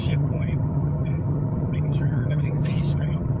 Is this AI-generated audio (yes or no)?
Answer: yes